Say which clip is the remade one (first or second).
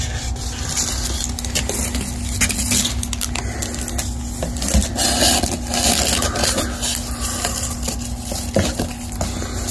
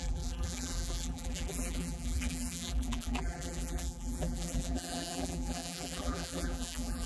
second